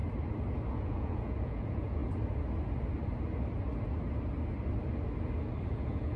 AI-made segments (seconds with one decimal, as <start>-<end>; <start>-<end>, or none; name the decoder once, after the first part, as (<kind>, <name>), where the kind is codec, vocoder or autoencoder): 0.7-2.0 (vocoder, Vocos); 5.7-6.2